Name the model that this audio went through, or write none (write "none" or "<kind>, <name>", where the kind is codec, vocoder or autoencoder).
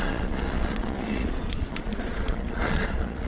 vocoder, Vocos